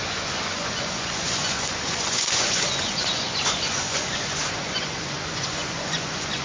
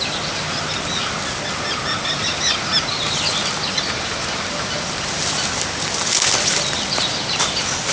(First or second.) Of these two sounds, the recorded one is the second